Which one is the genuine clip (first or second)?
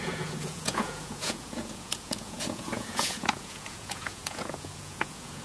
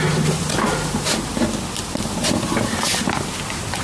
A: second